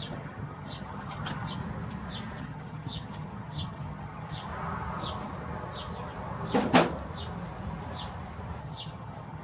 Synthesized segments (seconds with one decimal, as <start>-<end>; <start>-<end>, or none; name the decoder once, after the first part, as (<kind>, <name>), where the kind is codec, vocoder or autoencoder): 0.0-1.6 (vocoder, HiFi-GAN); 2.4-4.5; 8.6-9.4